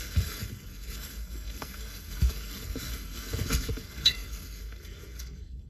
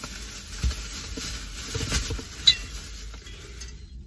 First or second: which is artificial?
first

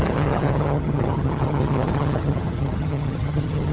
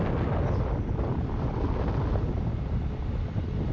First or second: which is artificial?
first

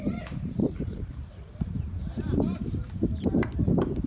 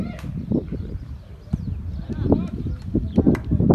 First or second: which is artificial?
first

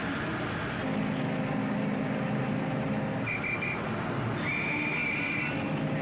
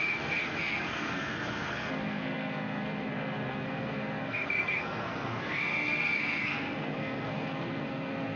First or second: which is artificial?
second